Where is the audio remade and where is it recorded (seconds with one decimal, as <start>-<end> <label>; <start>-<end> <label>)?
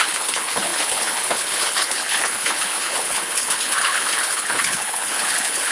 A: 0.0-5.7 remade